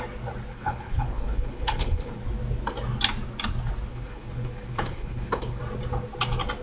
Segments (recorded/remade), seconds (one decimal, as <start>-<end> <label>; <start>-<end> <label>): 0.0-0.5 recorded; 0.5-2.2 remade; 2.2-3.9 recorded; 3.9-5.6 remade; 5.6-6.6 recorded